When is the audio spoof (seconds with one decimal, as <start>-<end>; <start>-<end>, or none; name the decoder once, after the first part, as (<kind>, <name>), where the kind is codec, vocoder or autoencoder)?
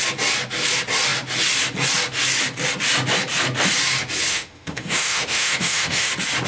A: 4.3-6.1 (autoencoder, DAC-VAE)